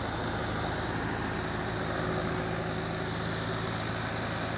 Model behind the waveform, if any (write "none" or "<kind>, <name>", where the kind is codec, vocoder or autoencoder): none